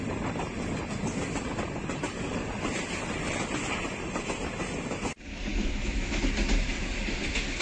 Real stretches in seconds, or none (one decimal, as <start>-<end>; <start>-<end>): 0.0-5.5; 6.2-7.6